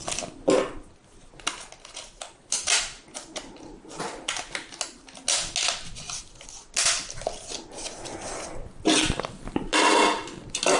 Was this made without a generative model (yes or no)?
yes